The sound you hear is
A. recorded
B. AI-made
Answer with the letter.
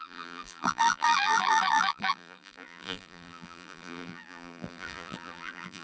B